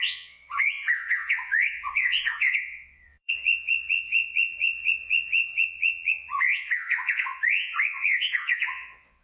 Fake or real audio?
fake